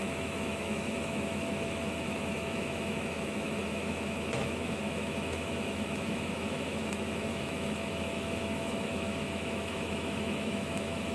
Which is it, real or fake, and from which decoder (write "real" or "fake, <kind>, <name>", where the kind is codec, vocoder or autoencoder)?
fake, autoencoder, DAC-VAE